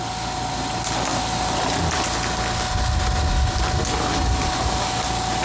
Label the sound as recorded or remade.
recorded